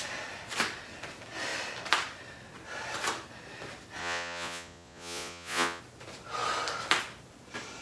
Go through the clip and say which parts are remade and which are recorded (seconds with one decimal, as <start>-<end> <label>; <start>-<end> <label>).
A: 0.0-4.0 recorded; 4.0-5.8 remade; 5.8-7.8 recorded